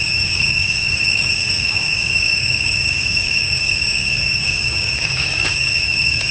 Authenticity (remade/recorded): remade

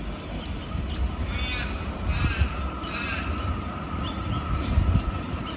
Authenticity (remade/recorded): recorded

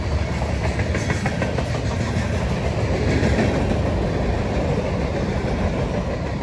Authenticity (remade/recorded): recorded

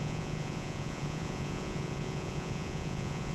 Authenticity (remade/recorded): remade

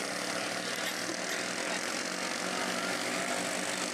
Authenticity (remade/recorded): recorded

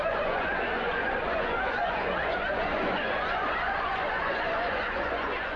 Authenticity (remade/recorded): remade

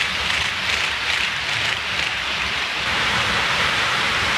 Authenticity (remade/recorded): remade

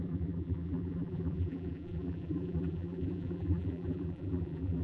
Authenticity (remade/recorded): remade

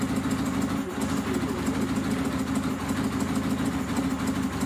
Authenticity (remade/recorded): recorded